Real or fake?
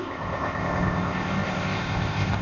fake